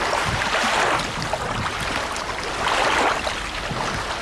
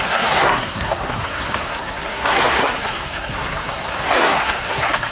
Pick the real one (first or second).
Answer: first